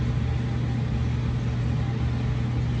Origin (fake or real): real